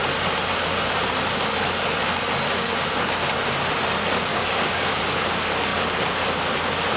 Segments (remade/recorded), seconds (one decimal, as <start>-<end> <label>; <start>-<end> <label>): 0.0-4.3 recorded; 4.3-5.0 remade; 5.0-7.0 recorded